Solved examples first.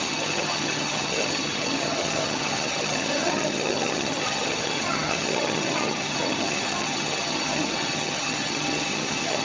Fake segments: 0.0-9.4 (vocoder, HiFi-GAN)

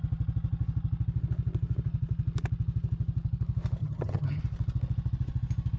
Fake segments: 3.8-4.4 (vocoder, HiFi-GAN)

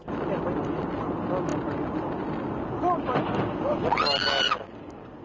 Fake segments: none